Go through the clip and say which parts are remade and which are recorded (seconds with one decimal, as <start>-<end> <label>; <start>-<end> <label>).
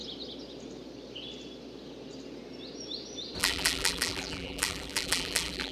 0.0-3.4 recorded; 3.4-5.7 remade